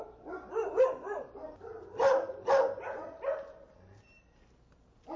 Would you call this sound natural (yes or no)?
yes